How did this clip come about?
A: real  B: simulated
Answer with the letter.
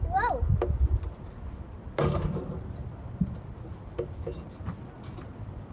A